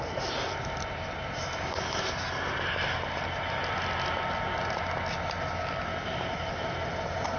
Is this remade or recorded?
recorded